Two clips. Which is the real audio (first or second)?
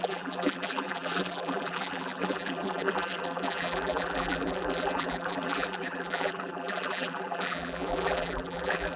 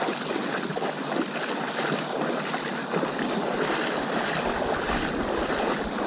second